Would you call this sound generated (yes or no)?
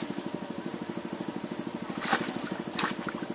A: yes